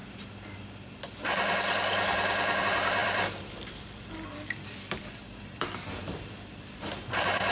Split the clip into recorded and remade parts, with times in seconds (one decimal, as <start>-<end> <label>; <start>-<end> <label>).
0.0-2.6 recorded; 2.6-7.5 remade

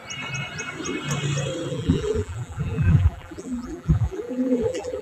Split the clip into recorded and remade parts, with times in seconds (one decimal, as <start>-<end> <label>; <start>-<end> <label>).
0.0-1.7 recorded; 1.7-5.0 remade

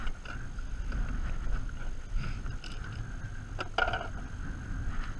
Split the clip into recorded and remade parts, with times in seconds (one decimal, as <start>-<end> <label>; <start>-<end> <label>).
0.0-5.2 recorded

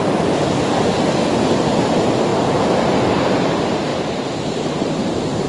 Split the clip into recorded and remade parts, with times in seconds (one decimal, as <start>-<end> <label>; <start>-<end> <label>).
0.0-1.8 recorded; 1.8-2.3 remade; 2.3-3.1 recorded; 3.1-5.5 remade